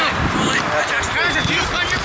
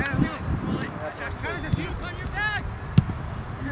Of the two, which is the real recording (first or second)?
second